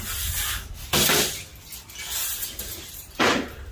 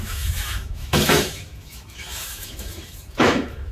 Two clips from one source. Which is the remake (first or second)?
second